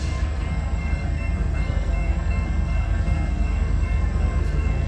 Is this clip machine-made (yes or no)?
yes